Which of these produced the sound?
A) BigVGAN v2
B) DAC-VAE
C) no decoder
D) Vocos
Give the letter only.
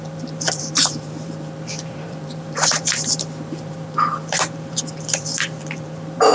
A